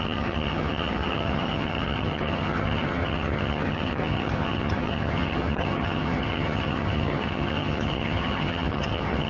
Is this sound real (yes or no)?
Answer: no